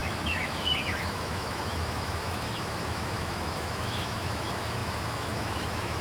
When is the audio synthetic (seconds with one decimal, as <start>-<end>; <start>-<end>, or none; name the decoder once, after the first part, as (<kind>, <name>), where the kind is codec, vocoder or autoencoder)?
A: 0.0-6.0 (autoencoder, DAC-VAE)

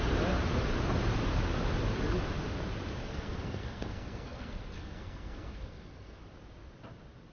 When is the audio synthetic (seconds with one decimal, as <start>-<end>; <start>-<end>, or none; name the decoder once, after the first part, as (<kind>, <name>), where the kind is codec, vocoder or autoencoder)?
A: 3.0-6.2 (codec, SNAC)

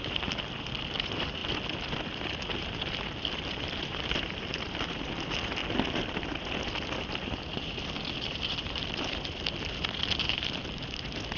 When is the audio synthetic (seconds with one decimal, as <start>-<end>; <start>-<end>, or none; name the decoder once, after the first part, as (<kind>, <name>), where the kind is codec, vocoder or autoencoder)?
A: 0.0-1.4 (vocoder, BigVGAN v2); 2.2-5.6; 7.1-11.4

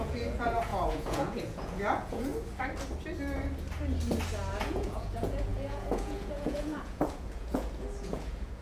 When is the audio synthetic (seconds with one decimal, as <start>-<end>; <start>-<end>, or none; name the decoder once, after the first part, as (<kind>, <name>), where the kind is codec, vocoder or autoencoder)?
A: 0.0-2.3 (vocoder, Vocos); 4.6-8.6

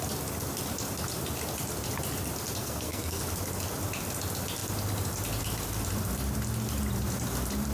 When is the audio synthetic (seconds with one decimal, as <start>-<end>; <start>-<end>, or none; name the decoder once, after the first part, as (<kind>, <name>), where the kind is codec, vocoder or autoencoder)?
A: 2.6-3.2 (codec, SNAC)

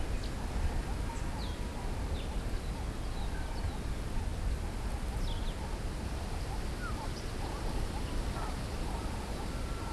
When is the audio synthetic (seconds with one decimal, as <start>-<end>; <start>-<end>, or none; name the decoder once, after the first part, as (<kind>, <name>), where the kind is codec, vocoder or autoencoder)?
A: none

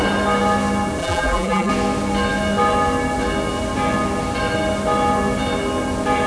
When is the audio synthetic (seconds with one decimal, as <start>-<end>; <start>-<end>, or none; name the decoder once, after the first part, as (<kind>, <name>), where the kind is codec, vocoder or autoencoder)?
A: 1.0-1.7 (vocoder, BigVGAN v2)

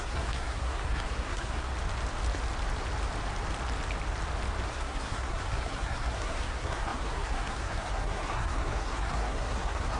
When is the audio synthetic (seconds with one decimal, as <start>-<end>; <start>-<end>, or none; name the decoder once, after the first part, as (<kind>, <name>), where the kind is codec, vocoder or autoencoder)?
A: 0.0-1.7 (codec, SNAC); 4.7-10.0